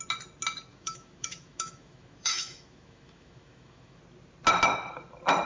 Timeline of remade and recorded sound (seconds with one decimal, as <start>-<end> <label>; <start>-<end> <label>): 0.0-0.7 recorded; 0.7-4.0 remade; 4.0-5.5 recorded